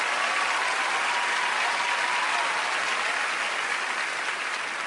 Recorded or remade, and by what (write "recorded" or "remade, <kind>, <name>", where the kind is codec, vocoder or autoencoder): recorded